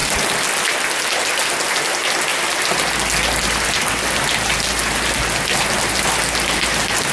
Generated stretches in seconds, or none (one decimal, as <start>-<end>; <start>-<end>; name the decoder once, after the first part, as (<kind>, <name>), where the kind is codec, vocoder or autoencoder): none